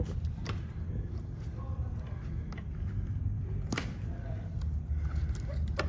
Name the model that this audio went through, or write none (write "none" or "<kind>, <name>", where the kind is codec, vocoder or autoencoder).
none